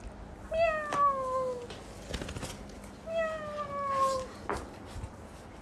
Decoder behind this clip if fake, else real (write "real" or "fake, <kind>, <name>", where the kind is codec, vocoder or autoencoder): real